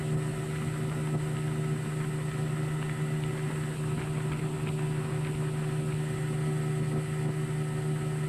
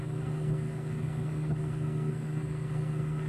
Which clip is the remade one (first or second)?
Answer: second